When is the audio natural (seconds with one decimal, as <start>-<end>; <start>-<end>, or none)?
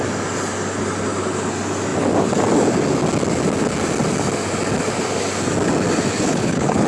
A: 0.0-6.1